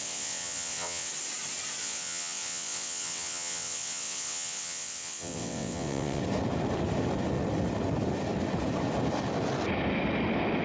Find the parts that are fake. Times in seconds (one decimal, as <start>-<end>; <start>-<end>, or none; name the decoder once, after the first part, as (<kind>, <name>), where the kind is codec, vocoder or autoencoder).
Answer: 0.0-1.1 (vocoder, WaveNeXt); 1.8-6.2